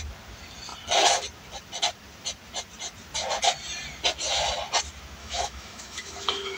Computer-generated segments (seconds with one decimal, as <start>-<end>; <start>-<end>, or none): 5.2-6.6